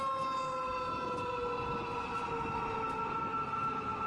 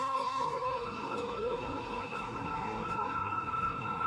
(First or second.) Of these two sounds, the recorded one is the first